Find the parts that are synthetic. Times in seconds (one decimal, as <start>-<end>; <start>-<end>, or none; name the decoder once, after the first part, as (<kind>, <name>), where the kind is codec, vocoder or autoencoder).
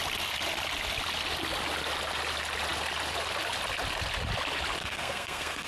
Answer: 4.8-5.7 (codec, SNAC)